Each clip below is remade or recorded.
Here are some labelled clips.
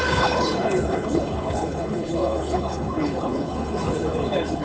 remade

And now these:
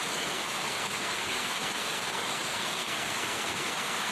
remade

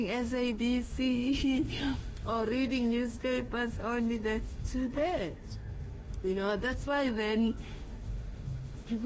remade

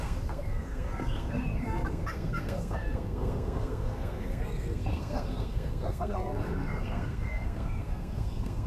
remade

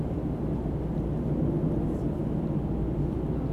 recorded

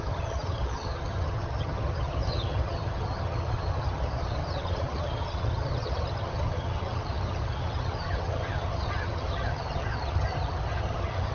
remade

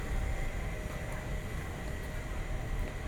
recorded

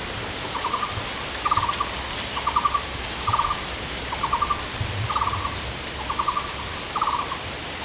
recorded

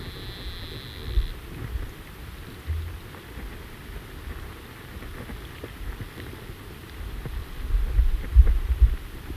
recorded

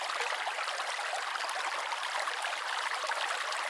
recorded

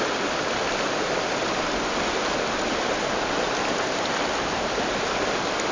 recorded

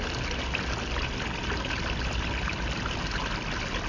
recorded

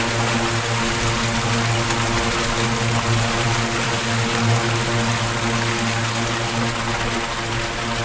recorded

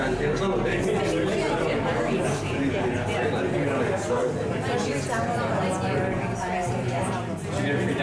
recorded